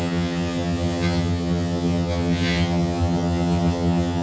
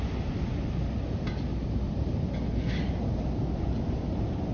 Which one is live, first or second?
second